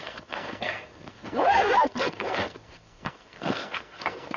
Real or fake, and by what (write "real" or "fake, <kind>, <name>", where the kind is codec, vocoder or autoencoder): fake, codec, SNAC